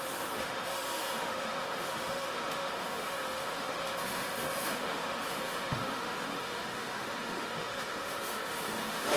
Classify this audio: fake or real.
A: fake